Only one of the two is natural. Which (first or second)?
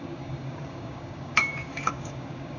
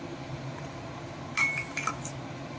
second